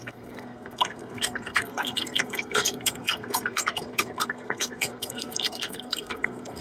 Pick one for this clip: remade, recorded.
remade